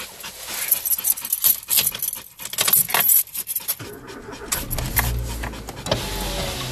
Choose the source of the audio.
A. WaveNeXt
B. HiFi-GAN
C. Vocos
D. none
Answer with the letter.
D